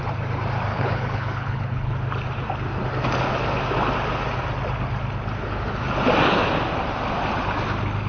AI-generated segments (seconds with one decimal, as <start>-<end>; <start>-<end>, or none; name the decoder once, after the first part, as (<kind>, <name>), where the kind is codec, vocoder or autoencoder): 0.7-1.9 (codec, HILCodec)